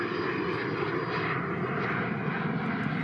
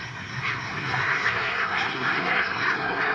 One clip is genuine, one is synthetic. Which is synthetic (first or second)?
second